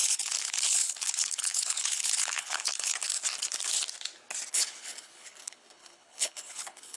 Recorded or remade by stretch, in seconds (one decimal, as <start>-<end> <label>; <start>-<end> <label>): 0.0-3.1 remade; 3.1-4.5 recorded; 4.5-7.0 remade